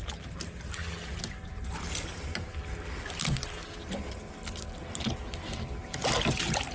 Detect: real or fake real